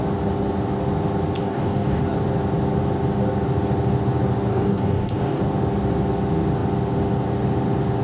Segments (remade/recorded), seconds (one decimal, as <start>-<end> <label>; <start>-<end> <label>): 0.0-1.4 recorded; 1.4-2.0 remade; 2.0-4.5 recorded; 4.5-5.4 remade; 5.4-8.0 recorded